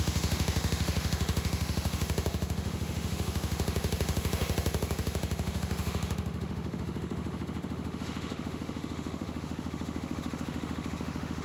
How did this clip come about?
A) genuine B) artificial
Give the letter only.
B